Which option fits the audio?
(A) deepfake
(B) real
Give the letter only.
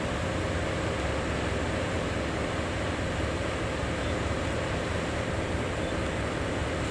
B